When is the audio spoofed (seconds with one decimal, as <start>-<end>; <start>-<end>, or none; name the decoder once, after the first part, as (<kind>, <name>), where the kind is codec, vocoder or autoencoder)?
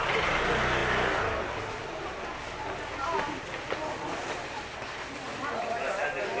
none